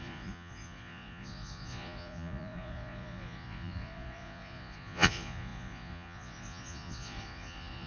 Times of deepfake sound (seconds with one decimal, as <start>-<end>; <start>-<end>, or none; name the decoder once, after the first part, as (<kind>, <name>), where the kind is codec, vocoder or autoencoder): 0.0-7.9 (vocoder, Vocos)